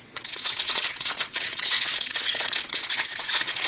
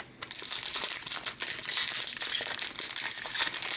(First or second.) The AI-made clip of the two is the first